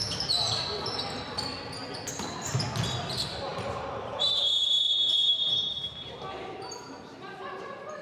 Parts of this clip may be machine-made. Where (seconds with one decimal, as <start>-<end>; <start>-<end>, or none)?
3.1-8.0